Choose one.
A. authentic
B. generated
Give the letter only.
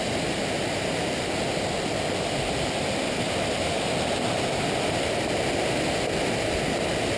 A